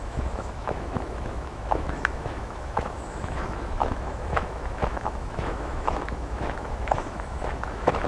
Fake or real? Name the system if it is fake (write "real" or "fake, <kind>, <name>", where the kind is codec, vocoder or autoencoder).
fake, autoencoder, DAC-VAE